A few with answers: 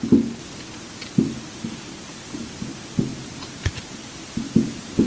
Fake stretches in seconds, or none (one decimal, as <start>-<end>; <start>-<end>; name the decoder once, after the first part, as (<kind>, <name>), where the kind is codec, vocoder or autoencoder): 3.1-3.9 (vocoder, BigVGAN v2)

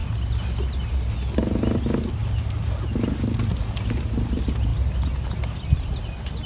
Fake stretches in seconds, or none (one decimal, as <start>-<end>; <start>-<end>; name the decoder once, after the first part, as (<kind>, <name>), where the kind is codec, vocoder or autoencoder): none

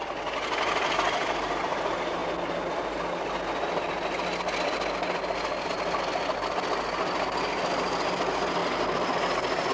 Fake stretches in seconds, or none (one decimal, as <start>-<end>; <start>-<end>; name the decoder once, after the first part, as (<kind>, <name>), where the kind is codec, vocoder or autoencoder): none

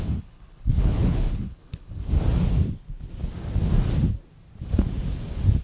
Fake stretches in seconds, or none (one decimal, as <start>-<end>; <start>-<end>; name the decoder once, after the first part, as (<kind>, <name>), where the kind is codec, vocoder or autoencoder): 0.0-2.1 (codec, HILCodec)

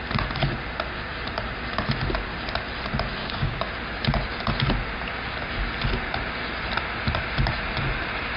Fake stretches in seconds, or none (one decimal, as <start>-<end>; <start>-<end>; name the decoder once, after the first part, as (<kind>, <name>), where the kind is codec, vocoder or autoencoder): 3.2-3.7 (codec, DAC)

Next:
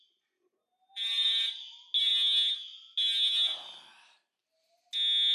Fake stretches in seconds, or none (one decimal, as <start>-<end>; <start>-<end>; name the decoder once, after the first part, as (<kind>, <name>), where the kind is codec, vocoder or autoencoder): 0.6-1.5 (vocoder, BigVGAN v2)